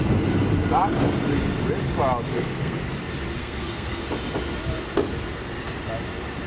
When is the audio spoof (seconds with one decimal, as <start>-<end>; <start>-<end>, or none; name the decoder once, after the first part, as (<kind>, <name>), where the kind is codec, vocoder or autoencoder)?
2.3-2.8 (codec, SNAC); 3.4-4.0